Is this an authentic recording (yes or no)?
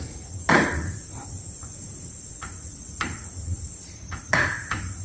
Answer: no